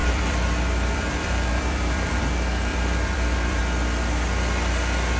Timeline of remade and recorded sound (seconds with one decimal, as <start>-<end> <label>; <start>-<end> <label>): 0.0-2.2 remade; 2.2-2.7 recorded; 2.7-3.6 remade; 3.6-5.2 recorded

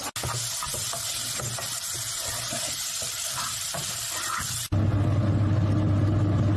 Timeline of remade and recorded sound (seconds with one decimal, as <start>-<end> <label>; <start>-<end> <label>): 0.0-1.7 recorded; 1.7-4.2 remade; 4.2-6.6 recorded

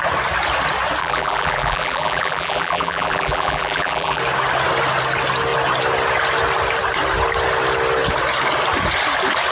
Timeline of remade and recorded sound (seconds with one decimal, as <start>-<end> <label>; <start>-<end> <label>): 0.0-1.0 recorded; 1.0-4.2 remade; 4.2-9.5 recorded

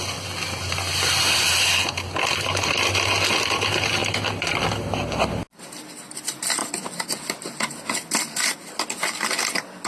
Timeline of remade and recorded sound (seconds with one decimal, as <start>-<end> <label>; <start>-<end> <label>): 0.0-9.9 recorded

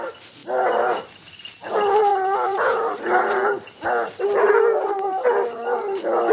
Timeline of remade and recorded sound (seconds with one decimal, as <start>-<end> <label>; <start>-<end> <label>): 0.0-0.4 recorded; 0.4-1.1 remade; 1.1-2.1 recorded; 2.1-3.3 remade; 3.3-6.3 recorded

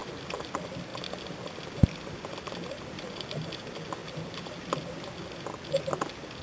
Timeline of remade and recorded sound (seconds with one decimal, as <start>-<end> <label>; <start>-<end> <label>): 0.0-0.9 recorded; 0.9-3.5 remade; 3.5-4.0 recorded; 4.0-5.9 remade; 5.9-6.4 recorded

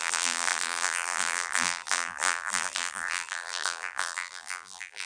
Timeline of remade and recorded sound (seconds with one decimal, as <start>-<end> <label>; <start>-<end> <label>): 0.0-5.1 remade